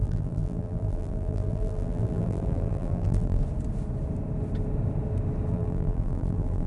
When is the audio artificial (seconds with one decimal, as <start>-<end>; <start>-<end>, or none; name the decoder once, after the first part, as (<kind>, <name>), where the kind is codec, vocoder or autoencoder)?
0.0-3.4 (vocoder, BigVGAN v2); 5.5-6.7